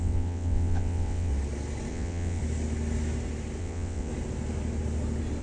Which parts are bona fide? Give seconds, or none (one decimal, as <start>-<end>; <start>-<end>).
1.3-1.9; 2.4-3.6; 4.1-5.4